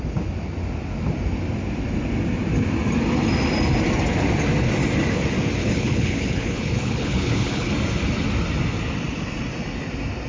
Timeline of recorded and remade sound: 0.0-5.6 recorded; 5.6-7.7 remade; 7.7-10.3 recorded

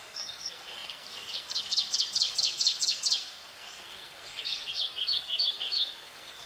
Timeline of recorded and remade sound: 0.0-6.5 remade

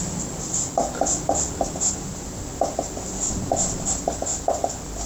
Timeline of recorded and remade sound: 0.0-0.8 remade; 0.8-3.9 recorded; 3.9-5.1 remade

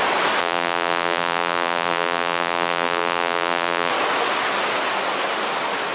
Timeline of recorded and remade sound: 0.0-0.4 recorded; 0.4-3.9 remade; 3.9-5.9 recorded